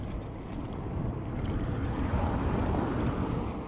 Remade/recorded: recorded